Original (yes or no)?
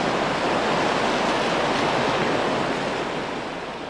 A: yes